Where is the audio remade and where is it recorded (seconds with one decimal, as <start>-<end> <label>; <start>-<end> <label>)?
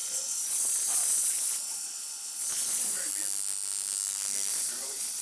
0.0-3.1 remade; 3.1-4.5 recorded; 4.5-5.2 remade